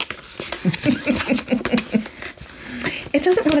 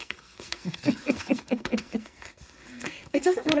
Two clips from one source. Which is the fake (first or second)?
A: second